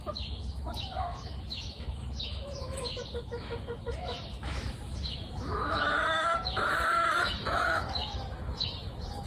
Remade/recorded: remade